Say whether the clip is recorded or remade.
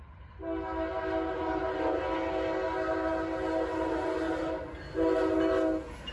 recorded